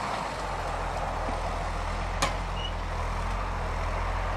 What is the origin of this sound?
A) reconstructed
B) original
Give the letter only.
B